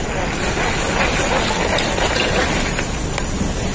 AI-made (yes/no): no